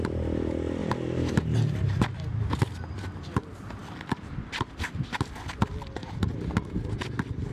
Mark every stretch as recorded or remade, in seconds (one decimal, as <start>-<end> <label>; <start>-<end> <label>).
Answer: 0.0-3.8 recorded; 3.8-4.9 remade; 4.9-7.5 recorded